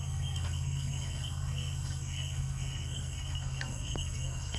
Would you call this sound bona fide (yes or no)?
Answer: no